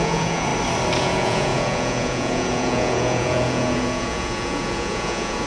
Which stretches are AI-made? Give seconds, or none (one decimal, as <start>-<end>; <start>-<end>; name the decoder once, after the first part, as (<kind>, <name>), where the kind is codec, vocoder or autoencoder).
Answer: 0.0-0.5 (vocoder, Vocos); 1.0-5.5